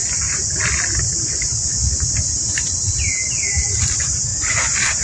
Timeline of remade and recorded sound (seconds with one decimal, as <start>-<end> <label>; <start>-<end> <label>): 0.0-4.3 recorded; 4.3-5.0 remade